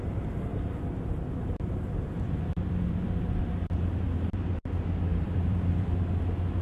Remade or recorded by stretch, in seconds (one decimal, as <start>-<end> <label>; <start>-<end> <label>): 0.0-0.5 recorded; 0.5-4.5 remade; 4.5-5.1 recorded; 5.1-6.0 remade; 6.0-6.6 recorded